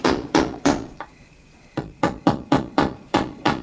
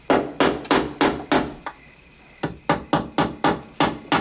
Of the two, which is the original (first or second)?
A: second